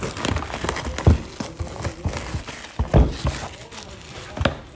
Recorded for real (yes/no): yes